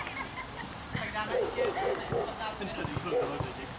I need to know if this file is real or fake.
real